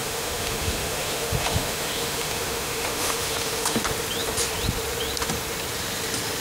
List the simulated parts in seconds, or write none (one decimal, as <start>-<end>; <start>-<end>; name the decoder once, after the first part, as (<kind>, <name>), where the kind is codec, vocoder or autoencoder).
0.0-3.8 (autoencoder, DAC-VAE)